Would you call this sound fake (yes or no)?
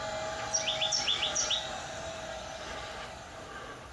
yes